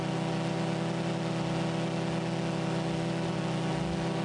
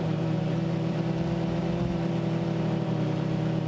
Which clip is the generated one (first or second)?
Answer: second